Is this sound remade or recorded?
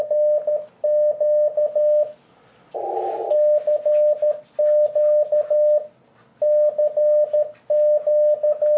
recorded